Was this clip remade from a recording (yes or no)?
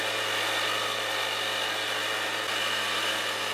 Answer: no